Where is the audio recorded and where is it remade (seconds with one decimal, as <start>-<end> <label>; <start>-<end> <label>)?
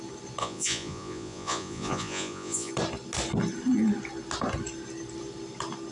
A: 0.0-0.4 recorded; 0.4-2.7 remade; 2.7-5.9 recorded